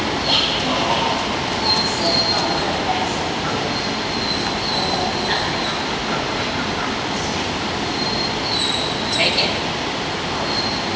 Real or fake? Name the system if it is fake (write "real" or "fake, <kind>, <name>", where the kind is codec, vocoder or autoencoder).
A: real